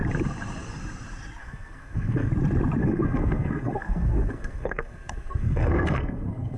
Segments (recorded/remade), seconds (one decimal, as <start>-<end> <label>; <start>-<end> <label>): 0.0-1.4 recorded; 1.4-2.3 remade; 2.3-2.8 recorded; 2.8-6.6 remade